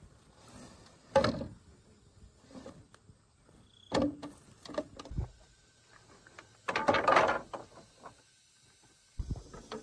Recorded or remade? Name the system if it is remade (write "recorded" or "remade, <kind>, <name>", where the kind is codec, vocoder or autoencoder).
recorded